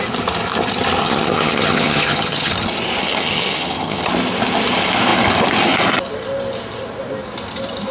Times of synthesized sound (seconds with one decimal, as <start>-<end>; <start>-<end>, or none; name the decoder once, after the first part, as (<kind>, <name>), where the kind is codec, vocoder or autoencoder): 1.0-2.5 (vocoder, HiFi-GAN); 3.0-4.1

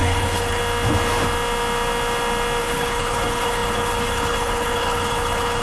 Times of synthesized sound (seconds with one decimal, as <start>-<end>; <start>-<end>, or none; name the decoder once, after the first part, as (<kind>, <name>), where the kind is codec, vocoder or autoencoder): 0.0-0.6 (codec, HILCodec); 2.6-5.6